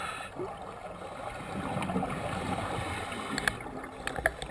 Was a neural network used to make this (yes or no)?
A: no